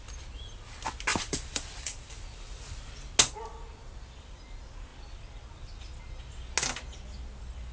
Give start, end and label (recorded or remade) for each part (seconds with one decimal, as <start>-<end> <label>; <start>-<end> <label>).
0.0-1.1 recorded; 1.1-2.1 remade; 2.1-7.7 recorded